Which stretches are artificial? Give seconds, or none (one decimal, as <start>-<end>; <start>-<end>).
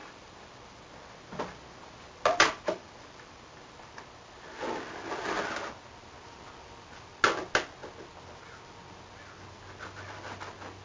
none